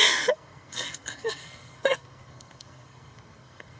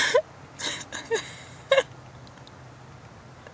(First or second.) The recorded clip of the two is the second